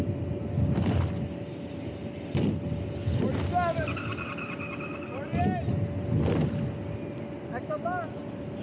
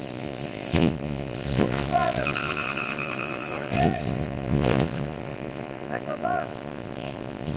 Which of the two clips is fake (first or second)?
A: second